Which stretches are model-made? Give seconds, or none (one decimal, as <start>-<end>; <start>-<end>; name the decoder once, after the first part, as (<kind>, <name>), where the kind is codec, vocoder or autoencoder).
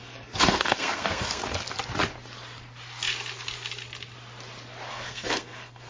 0.0-1.4 (codec, SNAC); 4.9-5.9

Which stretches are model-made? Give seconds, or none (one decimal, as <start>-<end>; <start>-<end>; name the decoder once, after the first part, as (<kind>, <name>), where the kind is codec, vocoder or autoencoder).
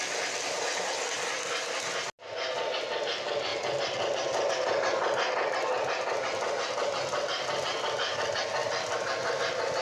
none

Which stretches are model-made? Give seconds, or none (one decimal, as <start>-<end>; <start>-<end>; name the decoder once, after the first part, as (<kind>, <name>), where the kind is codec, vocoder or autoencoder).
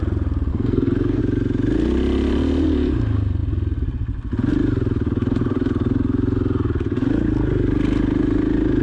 0.5-1.2 (codec, SNAC)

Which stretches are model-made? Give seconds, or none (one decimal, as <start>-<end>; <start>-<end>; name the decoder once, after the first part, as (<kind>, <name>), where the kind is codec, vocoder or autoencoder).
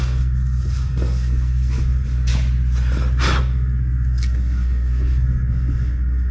0.0-2.3 (codec, SNAC); 3.4-6.3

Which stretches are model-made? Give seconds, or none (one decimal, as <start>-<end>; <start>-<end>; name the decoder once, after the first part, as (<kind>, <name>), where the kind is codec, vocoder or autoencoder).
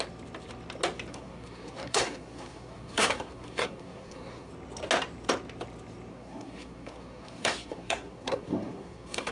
1.1-4.5 (codec, SNAC); 6.1-9.3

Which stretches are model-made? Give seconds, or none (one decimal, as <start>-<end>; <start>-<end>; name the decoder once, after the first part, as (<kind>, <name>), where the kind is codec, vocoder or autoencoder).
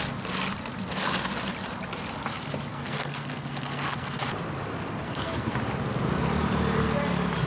2.7-4.2 (codec, SNAC); 5.0-5.5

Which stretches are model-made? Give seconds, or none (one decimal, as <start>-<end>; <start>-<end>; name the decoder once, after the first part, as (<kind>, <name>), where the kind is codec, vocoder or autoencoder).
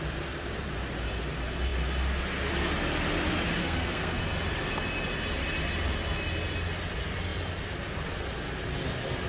3.6-4.2 (codec, SNAC)